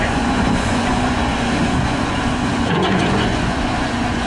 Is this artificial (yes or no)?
yes